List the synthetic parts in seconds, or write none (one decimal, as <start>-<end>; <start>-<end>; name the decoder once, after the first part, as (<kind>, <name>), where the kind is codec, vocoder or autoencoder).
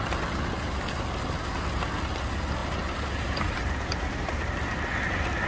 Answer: 2.6-4.4 (vocoder, BigVGAN v2)